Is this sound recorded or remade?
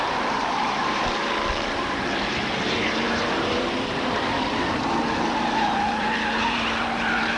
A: remade